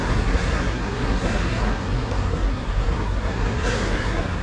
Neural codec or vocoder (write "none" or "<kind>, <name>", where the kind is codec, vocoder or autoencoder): codec, SNAC